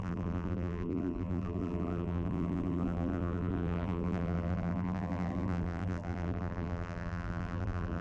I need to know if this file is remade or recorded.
remade